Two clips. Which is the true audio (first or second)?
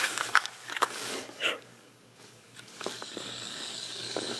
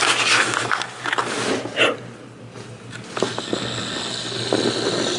second